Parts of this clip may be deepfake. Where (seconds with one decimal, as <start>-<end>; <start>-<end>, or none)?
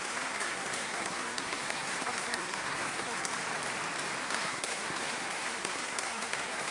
0.0-3.3; 4.2-6.7